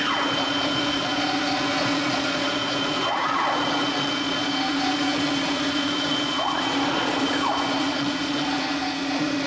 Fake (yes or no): yes